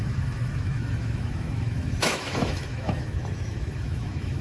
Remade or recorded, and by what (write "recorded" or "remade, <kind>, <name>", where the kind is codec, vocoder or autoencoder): remade, autoencoder, DAC-VAE